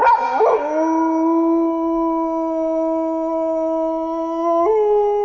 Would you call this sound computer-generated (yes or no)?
no